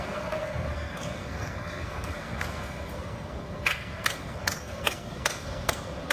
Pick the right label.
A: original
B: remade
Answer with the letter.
B